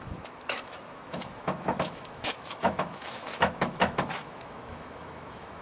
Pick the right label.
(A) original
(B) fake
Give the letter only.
B